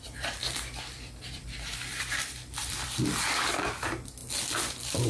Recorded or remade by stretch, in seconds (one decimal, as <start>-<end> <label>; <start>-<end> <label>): 0.0-4.2 remade; 4.2-5.1 recorded